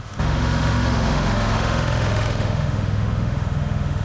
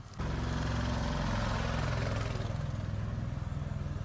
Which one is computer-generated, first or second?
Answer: first